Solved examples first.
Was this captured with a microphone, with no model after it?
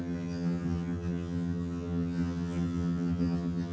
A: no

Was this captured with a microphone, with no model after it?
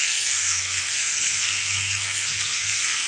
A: no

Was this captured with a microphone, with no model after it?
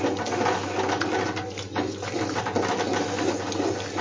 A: yes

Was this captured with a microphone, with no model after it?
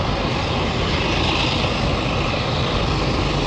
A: yes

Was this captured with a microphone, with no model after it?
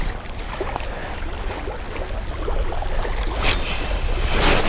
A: yes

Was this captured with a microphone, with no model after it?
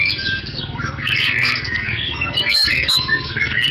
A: no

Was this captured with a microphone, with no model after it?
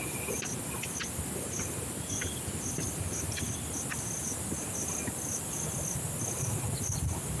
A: yes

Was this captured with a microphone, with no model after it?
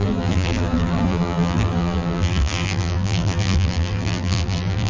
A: no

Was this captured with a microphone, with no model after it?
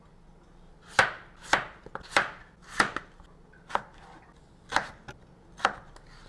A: yes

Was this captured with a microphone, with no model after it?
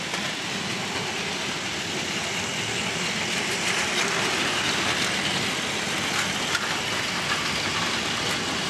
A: yes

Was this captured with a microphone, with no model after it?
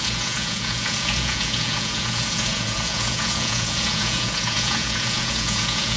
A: no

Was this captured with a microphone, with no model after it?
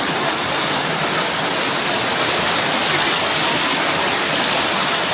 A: yes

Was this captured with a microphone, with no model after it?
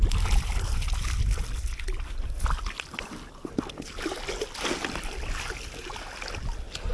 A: yes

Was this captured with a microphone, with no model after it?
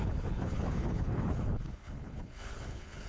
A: no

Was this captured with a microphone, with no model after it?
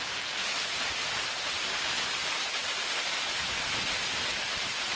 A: yes